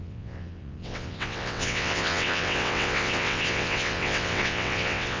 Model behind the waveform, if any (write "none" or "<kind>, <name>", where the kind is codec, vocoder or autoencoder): vocoder, WaveNeXt